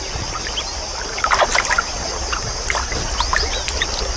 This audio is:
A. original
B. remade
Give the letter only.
A